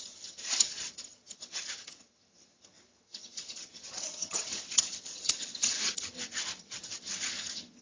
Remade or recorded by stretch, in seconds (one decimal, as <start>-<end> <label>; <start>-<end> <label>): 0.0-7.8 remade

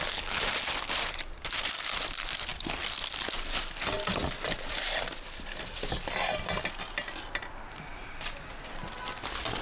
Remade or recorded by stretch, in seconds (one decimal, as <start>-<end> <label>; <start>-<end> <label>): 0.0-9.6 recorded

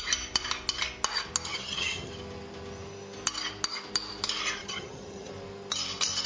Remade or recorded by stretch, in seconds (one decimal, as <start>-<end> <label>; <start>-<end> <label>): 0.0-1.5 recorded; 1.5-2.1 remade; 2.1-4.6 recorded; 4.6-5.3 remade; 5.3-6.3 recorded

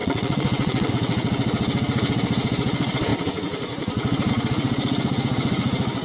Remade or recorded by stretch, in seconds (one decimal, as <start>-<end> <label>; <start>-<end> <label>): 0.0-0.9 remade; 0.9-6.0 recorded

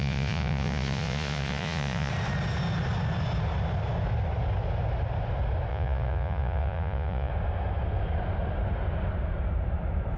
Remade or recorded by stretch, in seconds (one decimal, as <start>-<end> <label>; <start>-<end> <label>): 0.0-2.1 remade; 2.1-5.7 recorded; 5.7-7.3 remade; 7.3-10.2 recorded

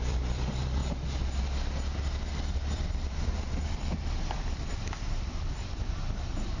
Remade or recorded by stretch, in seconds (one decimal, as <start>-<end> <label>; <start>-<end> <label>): 0.0-0.8 remade; 0.8-2.3 recorded; 2.3-6.6 remade